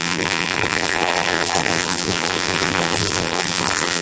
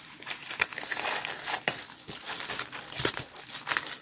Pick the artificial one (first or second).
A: first